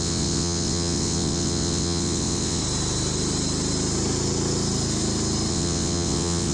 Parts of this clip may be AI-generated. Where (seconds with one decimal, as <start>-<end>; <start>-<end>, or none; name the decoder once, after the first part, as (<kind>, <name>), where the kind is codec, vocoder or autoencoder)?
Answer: 0.0-2.6 (vocoder, WaveNeXt); 5.5-6.5